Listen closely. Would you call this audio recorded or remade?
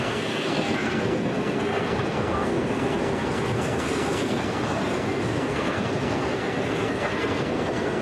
remade